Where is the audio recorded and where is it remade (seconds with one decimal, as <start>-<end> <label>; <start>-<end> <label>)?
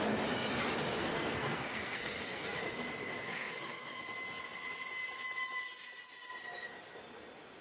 0.0-1.0 recorded; 1.0-2.6 remade; 2.6-3.3 recorded; 3.3-4.0 remade; 4.0-7.6 recorded